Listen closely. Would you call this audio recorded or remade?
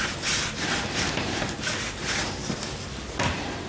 recorded